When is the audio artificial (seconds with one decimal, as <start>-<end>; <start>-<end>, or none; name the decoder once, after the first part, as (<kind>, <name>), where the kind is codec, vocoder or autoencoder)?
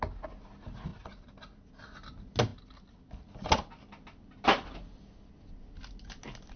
none